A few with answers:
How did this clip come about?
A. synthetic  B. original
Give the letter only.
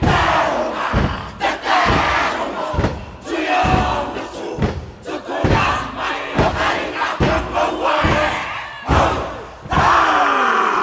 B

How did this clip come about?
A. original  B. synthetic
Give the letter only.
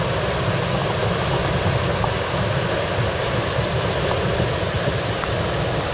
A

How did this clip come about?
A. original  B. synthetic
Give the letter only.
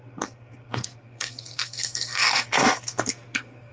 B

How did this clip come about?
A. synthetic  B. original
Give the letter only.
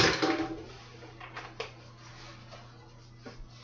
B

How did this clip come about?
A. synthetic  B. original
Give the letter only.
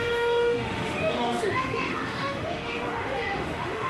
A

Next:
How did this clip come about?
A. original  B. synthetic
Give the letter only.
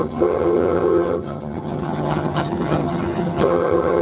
B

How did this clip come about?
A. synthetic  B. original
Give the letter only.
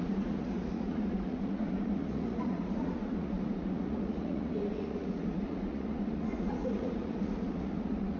A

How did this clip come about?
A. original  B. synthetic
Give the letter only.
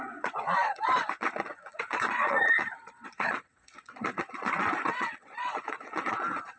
B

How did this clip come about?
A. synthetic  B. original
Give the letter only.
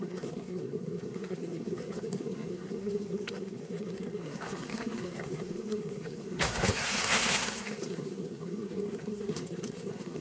A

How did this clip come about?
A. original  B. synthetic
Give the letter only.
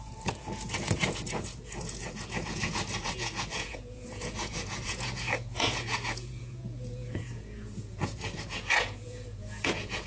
B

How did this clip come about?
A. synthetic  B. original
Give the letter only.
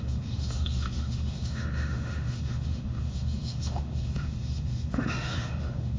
A